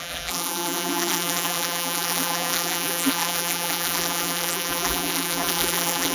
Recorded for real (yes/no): no